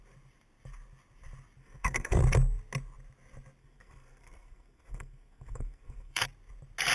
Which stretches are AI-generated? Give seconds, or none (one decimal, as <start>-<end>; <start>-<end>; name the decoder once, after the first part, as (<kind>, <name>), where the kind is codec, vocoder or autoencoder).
1.6-2.2 (codec, SNAC); 3.6-6.2